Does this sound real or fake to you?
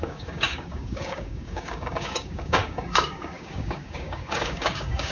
fake